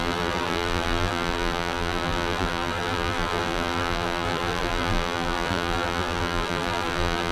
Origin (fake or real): fake